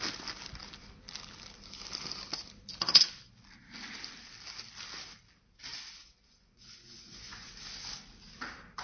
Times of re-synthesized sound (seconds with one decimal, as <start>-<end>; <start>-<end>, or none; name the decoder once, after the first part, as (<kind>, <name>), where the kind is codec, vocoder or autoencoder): 6.0-7.5 (vocoder, Vocos)